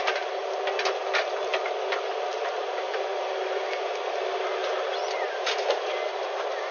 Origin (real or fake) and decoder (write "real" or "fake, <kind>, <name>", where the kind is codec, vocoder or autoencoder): real